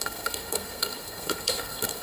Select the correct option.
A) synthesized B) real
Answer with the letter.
A